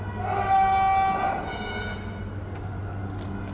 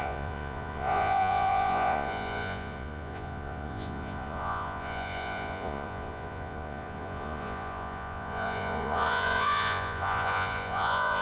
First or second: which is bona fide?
first